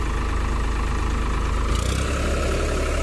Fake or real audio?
real